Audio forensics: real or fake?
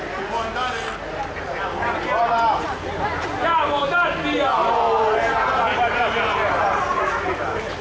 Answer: real